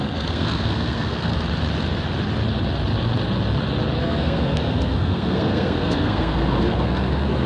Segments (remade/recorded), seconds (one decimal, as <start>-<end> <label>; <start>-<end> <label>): 0.0-1.3 remade; 1.3-4.0 recorded; 4.0-7.5 remade